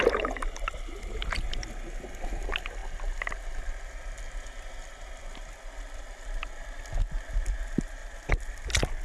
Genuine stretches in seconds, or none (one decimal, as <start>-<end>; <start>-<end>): 0.0-9.0